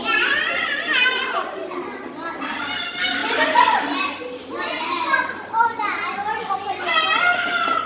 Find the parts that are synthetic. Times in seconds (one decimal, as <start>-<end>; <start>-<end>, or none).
none